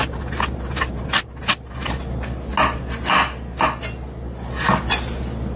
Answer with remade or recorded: recorded